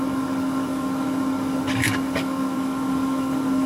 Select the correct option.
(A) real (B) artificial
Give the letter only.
B